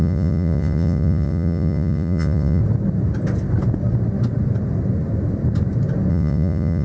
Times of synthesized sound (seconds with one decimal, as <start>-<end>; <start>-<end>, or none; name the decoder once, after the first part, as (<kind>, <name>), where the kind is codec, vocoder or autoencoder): 0.0-2.6 (vocoder, Vocos); 6.1-6.8

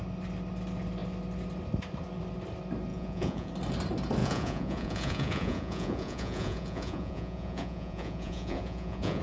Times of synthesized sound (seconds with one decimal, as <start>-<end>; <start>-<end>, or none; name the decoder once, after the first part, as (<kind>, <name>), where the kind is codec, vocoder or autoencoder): 2.9-3.5 (vocoder, Vocos); 4.2-9.2

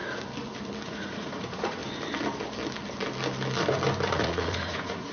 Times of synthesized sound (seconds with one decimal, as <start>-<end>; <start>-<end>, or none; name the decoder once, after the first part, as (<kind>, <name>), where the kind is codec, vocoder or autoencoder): 0.9-1.8 (vocoder, Vocos); 4.1-5.1

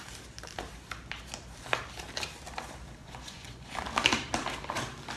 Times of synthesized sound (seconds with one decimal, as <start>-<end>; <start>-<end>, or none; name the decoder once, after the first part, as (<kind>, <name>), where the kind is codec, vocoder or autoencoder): 3.0-3.7 (vocoder, Vocos)

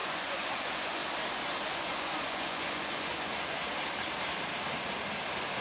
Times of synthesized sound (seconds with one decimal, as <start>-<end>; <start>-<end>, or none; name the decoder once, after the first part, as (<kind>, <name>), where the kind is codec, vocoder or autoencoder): 0.0-1.0 (vocoder, Vocos); 1.7-3.6

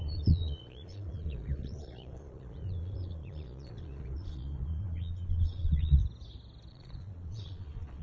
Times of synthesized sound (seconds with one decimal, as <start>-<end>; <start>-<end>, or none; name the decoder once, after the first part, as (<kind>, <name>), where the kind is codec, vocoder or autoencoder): 0.0-6.0 (vocoder, Vocos); 6.7-8.0

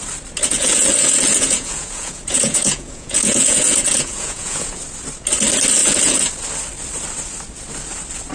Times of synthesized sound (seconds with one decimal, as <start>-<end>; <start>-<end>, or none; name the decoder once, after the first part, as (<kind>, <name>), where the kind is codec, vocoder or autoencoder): 0.5-4.8 (vocoder, Vocos); 5.8-6.3

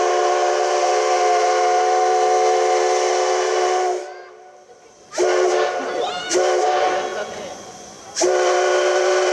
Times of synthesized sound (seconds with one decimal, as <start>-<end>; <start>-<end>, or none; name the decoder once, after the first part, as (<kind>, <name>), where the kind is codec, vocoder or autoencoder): 7.1-8.0 (vocoder, Vocos)